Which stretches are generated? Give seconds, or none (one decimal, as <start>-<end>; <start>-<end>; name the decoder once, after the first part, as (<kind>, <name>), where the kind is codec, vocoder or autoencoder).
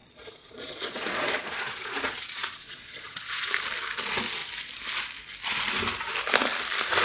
0.0-3.5 (vocoder, Vocos)